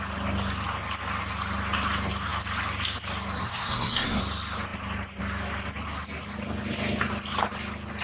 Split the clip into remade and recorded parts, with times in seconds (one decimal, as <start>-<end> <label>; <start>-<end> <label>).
0.0-3.4 recorded; 3.4-4.2 remade; 4.2-8.0 recorded